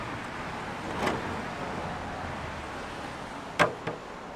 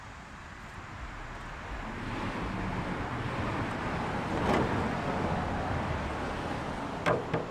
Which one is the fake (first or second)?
second